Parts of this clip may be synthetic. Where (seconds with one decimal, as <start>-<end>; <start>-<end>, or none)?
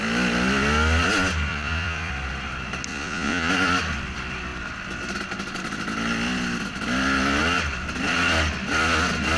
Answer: 1.5-2.1; 2.9-3.5